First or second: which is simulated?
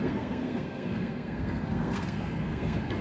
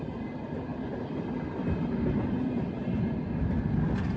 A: first